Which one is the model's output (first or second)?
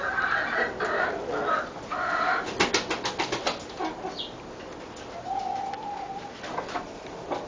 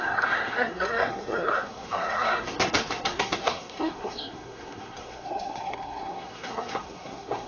second